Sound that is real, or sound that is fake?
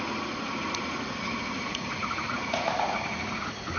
fake